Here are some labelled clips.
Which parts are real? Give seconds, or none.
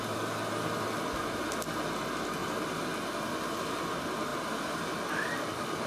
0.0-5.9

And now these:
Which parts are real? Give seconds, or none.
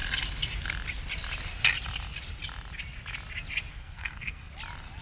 0.0-3.7; 4.5-5.0